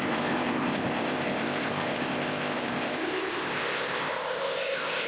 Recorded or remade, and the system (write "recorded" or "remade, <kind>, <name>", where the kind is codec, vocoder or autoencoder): remade, codec, ZipCodec